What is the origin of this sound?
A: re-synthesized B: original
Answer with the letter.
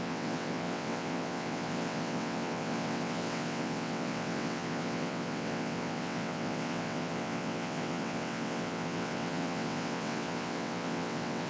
A